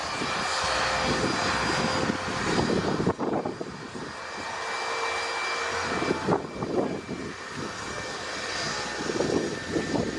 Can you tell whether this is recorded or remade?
recorded